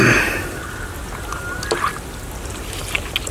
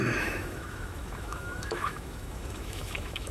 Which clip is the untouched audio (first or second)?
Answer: first